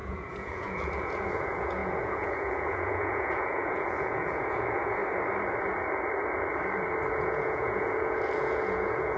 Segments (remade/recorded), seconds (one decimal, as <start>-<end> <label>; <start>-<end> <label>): 0.0-5.0 remade; 5.0-7.1 recorded; 7.1-9.2 remade